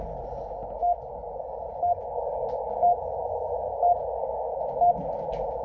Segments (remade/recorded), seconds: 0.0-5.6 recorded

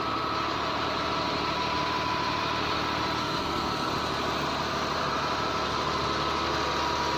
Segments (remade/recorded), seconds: 0.0-3.2 recorded; 3.2-3.9 remade; 3.9-7.2 recorded

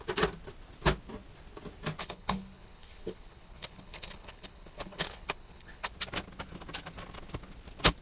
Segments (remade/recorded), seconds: 0.0-2.0 recorded; 2.0-5.9 remade; 5.9-8.0 recorded

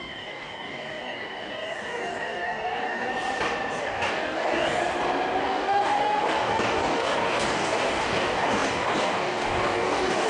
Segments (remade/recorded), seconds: 0.0-3.1 remade; 3.1-3.8 recorded; 3.8-4.8 remade; 4.8-5.4 recorded; 5.4-10.3 remade

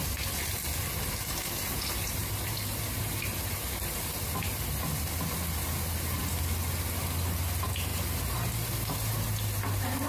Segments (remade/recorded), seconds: 0.0-1.7 recorded; 1.7-3.0 remade; 3.0-10.1 recorded

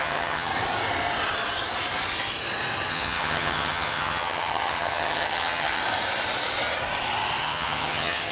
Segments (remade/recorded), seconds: 0.0-0.5 remade; 0.5-2.9 recorded; 2.9-5.8 remade; 5.8-7.4 recorded; 7.4-8.3 remade

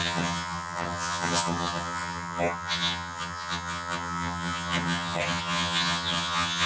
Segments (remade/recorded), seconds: 0.0-6.7 remade